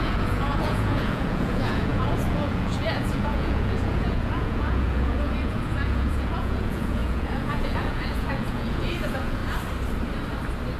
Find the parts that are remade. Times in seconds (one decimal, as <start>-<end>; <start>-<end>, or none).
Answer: 0.0-9.4